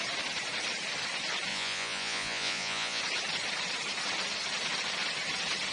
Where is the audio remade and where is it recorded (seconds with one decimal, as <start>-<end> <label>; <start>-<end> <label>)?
0.0-1.5 recorded; 1.5-3.0 remade; 3.0-5.7 recorded